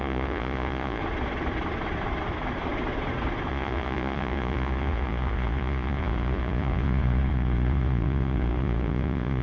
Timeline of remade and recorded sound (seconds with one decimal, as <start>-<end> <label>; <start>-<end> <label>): 0.0-1.0 remade; 1.0-3.5 recorded; 3.5-9.4 remade